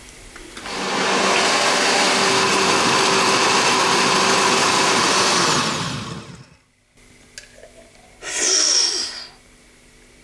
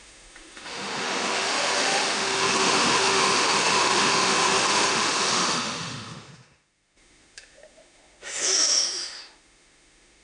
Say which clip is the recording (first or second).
first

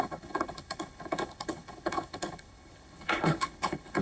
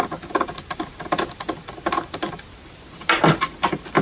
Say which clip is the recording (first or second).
second